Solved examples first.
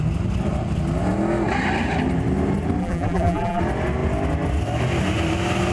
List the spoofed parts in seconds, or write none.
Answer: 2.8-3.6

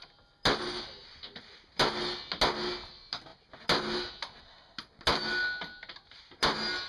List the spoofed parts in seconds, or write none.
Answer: none

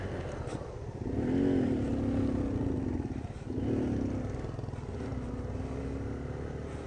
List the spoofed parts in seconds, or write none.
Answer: none

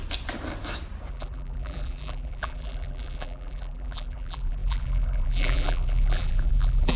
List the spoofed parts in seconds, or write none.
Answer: 1.1-7.0

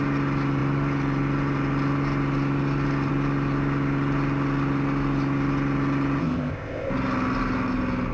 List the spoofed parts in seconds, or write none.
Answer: 6.2-6.9

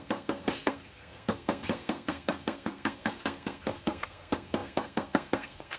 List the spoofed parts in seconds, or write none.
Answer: 0.0-5.8

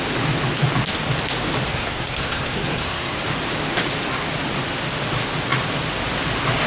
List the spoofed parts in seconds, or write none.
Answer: 1.7-3.2

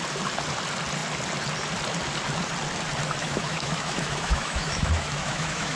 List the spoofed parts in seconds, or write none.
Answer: 3.2-5.8